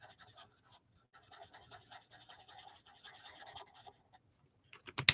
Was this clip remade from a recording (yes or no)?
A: no